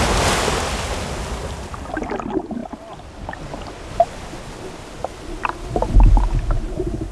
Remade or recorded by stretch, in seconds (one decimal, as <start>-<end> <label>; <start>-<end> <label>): 0.0-7.1 recorded